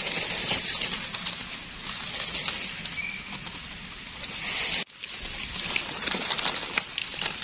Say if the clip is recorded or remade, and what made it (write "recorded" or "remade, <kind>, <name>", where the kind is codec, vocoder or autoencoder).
recorded